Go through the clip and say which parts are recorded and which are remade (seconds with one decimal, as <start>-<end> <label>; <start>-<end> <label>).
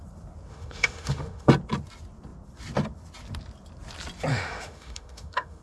0.0-0.5 recorded; 0.5-1.5 remade; 1.5-4.3 recorded; 4.3-5.6 remade